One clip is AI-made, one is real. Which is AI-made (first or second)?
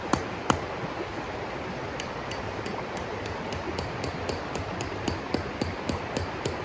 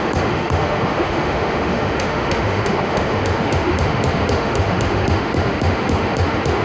second